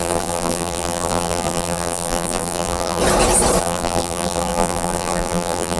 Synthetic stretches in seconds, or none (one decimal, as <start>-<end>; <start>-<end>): 0.0-3.0; 3.6-5.8